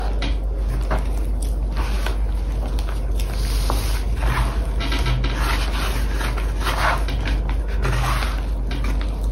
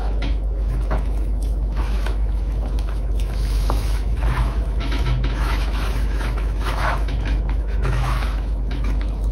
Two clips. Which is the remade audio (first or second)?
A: second